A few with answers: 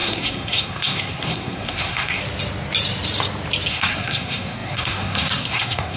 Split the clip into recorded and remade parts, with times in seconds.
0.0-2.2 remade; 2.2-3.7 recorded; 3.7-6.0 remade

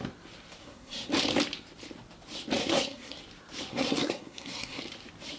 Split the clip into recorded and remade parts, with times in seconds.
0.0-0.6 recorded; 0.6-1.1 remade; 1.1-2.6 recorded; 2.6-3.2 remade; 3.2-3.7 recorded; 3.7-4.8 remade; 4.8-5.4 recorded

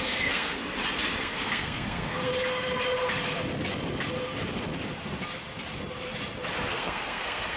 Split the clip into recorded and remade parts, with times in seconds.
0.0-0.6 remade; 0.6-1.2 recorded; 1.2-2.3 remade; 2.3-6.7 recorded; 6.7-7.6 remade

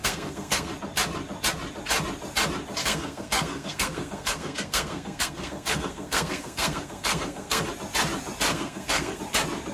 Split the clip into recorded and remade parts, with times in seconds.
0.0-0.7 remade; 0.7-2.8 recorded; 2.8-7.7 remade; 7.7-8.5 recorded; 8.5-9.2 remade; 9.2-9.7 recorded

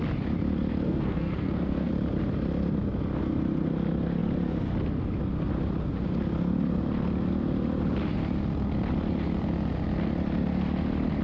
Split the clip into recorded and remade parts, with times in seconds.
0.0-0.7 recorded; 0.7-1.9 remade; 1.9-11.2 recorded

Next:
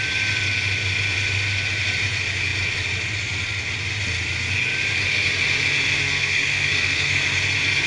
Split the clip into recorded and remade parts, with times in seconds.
0.0-6.0 recorded; 6.0-7.2 remade; 7.2-7.9 recorded

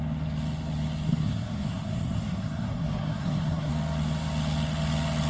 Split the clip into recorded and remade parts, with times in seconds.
0.0-1.1 recorded; 1.1-3.7 remade; 3.7-5.3 recorded

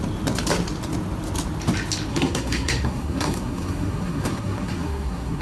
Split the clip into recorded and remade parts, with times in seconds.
0.0-2.1 recorded; 2.1-5.4 remade